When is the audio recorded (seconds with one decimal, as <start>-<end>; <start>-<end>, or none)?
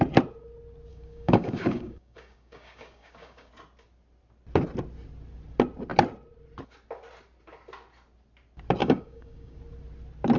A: 0.0-0.9; 3.5-8.8; 9.6-10.4